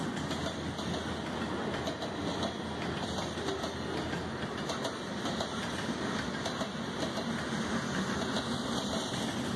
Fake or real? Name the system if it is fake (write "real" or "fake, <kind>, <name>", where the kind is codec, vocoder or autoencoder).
real